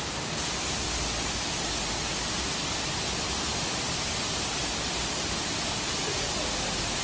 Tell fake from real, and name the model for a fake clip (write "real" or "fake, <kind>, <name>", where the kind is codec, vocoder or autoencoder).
real